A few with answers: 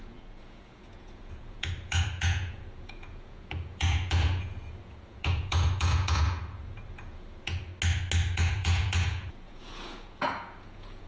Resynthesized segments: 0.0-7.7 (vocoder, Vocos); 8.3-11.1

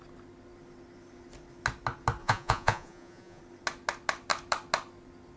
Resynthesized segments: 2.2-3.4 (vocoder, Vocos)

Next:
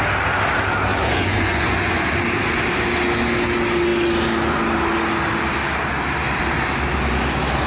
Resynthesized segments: 0.9-2.1 (vocoder, Vocos)

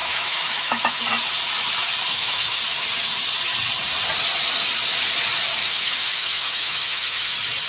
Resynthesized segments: 0.0-1.0 (autoencoder, DAC-VAE); 2.1-2.6; 5.6-7.3

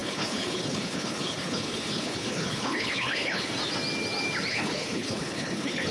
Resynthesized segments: 0.0-3.5 (codec, HILCodec); 4.5-5.9

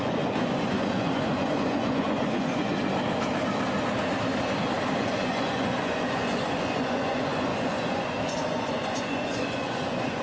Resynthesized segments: 0.0-2.7 (vocoder, Vocos); 5.0-10.2

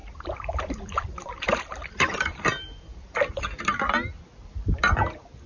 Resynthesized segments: 0.0-3.3 (vocoder, BigVGAN v2)